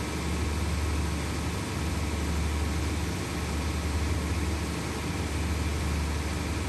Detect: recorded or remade recorded